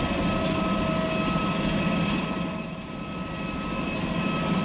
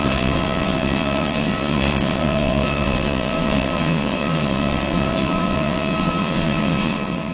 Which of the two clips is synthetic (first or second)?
second